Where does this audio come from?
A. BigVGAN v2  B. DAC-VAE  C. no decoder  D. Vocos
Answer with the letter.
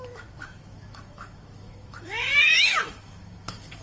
B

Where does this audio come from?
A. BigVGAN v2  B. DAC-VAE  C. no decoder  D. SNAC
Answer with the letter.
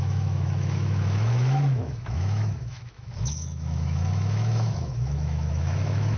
B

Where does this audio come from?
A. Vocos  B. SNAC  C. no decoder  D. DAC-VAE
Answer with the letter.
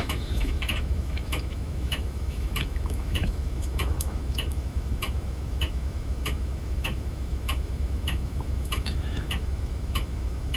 D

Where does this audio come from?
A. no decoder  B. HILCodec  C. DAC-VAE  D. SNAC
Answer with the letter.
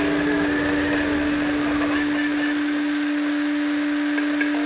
A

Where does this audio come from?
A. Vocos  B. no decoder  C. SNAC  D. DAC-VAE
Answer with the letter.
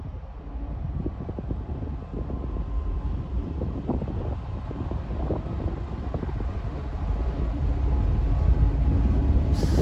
B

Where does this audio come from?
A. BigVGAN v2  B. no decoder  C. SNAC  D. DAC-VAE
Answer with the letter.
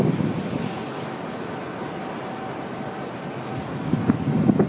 B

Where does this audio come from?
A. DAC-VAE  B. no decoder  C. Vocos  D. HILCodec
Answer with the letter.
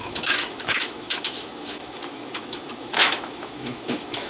A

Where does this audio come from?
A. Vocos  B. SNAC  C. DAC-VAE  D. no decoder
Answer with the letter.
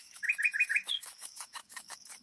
C